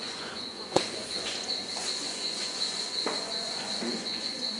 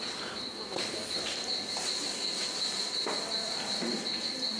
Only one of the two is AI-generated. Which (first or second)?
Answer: first